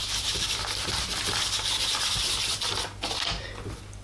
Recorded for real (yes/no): yes